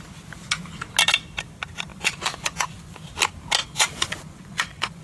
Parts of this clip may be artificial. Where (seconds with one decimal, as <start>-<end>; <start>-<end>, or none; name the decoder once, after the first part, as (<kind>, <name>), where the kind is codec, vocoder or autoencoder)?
1.9-2.9 (vocoder, Vocos); 3.6-5.0